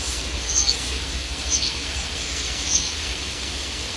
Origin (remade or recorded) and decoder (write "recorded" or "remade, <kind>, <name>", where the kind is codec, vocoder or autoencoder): remade, codec, SNAC